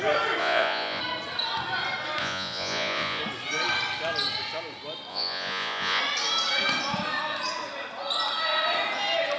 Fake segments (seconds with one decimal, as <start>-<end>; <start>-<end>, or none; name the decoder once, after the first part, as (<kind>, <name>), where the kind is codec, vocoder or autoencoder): 0.4-1.0 (vocoder, Vocos); 2.2-3.2; 5.1-6.0

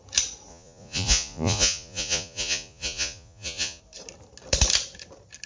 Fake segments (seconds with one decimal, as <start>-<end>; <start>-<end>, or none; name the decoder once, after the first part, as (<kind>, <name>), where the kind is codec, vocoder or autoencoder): 0.5-3.8 (vocoder, Vocos)